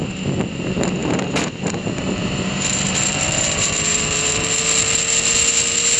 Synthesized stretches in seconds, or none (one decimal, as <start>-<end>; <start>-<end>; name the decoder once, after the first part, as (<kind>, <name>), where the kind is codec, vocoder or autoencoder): 1.0-4.6 (vocoder, BigVGAN v2)